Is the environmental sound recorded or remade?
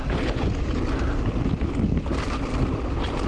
recorded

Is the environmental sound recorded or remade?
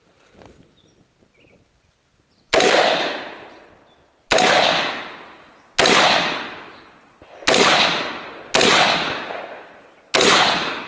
recorded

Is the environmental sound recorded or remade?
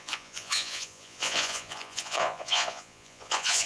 remade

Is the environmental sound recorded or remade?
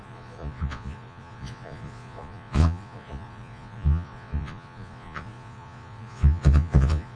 remade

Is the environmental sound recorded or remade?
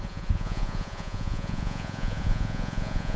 remade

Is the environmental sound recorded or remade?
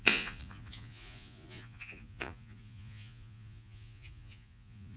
remade